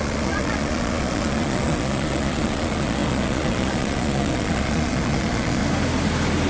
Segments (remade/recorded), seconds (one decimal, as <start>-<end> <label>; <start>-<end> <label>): 0.0-5.6 remade; 5.6-6.5 recorded